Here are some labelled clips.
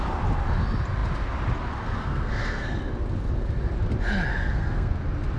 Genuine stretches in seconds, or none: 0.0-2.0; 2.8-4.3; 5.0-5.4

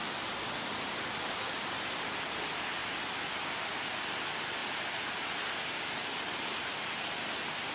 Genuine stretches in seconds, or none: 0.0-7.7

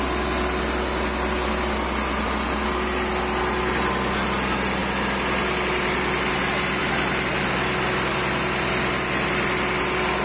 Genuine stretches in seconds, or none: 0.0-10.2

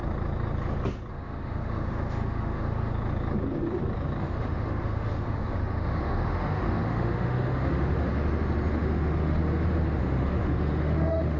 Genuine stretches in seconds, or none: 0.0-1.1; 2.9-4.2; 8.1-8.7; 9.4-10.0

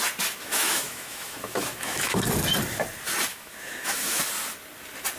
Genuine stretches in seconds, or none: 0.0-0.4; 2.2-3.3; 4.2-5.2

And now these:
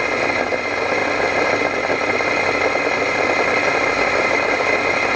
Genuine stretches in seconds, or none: 0.0-5.2